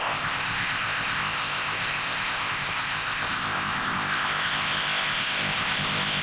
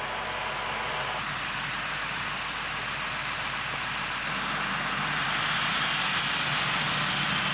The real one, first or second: second